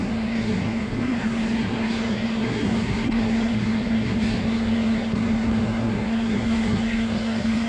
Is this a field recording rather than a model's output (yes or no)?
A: no